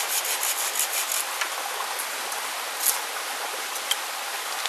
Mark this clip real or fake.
real